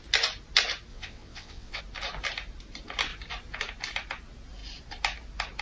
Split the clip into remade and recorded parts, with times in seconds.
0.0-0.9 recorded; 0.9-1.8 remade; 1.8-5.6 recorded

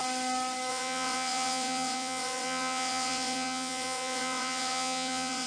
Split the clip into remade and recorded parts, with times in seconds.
0.0-0.7 recorded; 0.7-5.5 remade

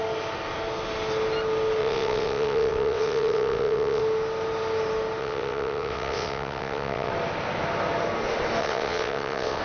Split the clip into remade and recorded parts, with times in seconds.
0.0-1.8 recorded; 1.8-4.0 remade; 4.0-5.2 recorded; 5.2-7.1 remade; 7.1-8.6 recorded; 8.6-9.6 remade

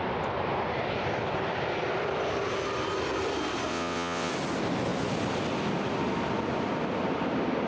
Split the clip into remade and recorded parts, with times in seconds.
0.0-3.7 recorded; 3.7-4.3 remade; 4.3-7.7 recorded

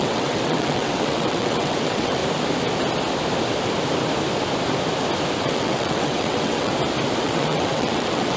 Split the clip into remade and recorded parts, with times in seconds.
0.0-2.2 remade; 2.2-5.4 recorded; 5.4-6.7 remade; 6.7-7.2 recorded; 7.2-8.4 remade

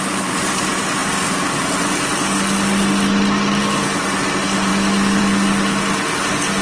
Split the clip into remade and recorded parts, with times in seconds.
0.0-6.6 recorded